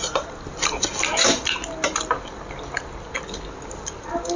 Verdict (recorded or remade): recorded